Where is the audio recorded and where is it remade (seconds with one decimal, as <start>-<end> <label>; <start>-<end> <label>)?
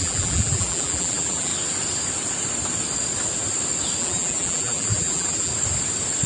0.0-1.5 remade; 1.5-4.0 recorded; 4.0-5.5 remade; 5.5-6.3 recorded